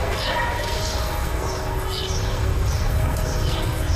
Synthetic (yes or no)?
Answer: yes